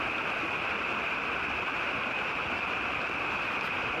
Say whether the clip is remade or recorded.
remade